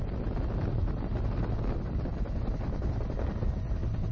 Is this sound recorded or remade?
recorded